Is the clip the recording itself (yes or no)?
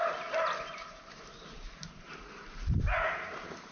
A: no